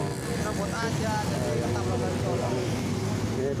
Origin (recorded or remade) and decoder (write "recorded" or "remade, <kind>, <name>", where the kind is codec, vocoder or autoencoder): recorded